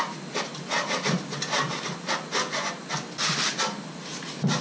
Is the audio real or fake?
real